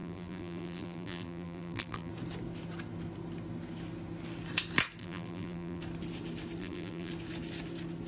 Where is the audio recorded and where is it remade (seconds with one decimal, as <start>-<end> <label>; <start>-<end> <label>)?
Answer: 0.0-2.1 remade; 2.1-5.0 recorded; 5.0-5.8 remade; 5.8-6.6 recorded; 6.6-7.1 remade; 7.1-8.1 recorded